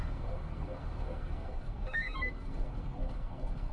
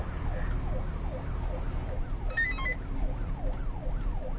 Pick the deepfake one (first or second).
first